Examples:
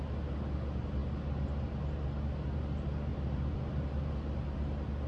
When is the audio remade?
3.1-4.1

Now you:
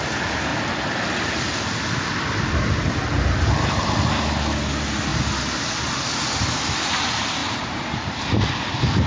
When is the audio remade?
7.4-8.2

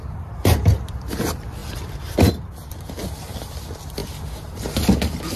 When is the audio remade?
0.0-5.4

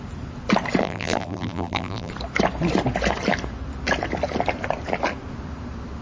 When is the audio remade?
0.8-2.1

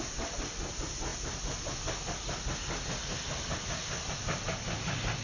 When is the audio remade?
none

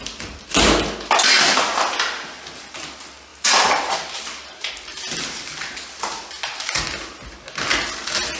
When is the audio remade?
3.3-4.7